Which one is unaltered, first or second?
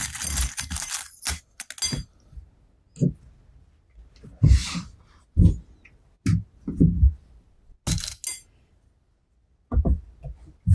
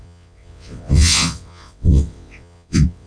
first